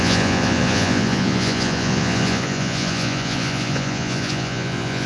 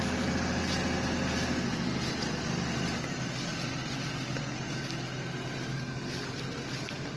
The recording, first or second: second